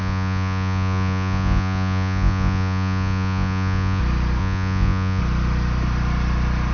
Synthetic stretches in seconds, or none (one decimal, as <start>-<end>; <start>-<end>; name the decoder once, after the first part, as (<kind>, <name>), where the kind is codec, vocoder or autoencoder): 0.0-4.0 (vocoder, Vocos); 4.4-5.2